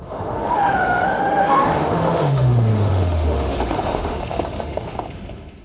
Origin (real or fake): fake